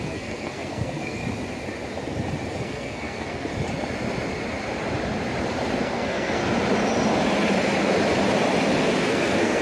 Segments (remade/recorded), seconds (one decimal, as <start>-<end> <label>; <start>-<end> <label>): 0.0-1.2 remade; 1.2-2.6 recorded; 2.6-3.5 remade; 3.5-5.8 recorded; 5.8-6.4 remade; 6.4-9.1 recorded; 9.1-9.6 remade